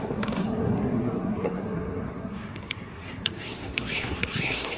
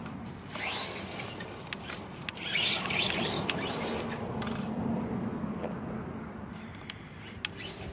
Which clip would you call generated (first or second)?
first